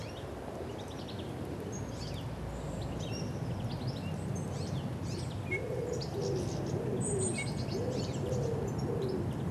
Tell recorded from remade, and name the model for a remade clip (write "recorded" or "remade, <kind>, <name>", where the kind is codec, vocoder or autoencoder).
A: recorded